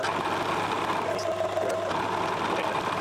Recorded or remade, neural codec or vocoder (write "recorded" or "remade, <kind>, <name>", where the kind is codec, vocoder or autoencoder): recorded